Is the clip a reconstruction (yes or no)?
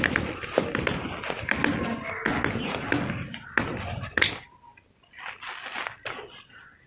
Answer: no